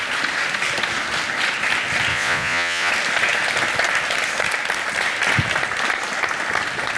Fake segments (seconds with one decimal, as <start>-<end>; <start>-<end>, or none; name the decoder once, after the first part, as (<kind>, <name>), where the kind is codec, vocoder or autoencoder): 2.1-2.9 (vocoder, Vocos)